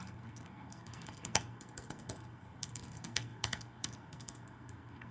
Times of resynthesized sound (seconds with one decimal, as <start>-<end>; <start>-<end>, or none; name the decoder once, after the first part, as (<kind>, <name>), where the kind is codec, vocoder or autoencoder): 0.0-5.1 (codec, SNAC)